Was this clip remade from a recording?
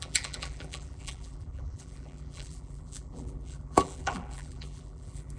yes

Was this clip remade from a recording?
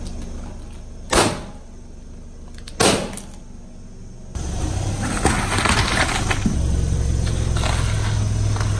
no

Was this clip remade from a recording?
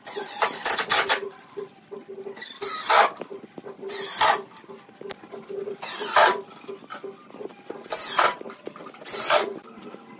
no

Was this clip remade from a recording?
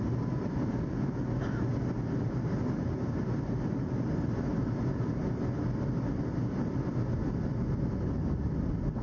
no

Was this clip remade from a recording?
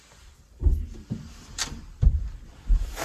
yes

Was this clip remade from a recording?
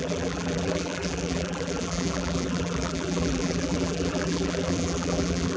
yes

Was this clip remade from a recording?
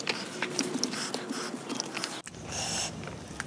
no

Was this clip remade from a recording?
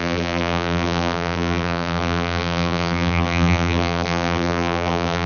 yes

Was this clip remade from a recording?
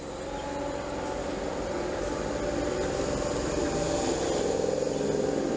no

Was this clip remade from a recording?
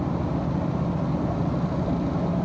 no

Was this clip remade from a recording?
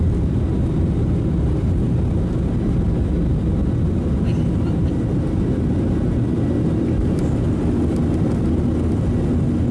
no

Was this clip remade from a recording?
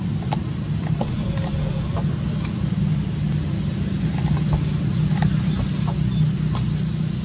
no